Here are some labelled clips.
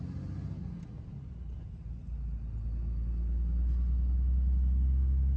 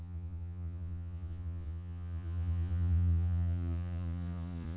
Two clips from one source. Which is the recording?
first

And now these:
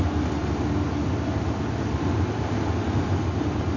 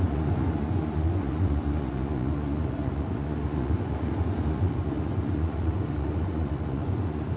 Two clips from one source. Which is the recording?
first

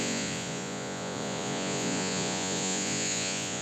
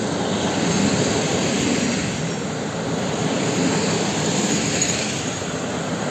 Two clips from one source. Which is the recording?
second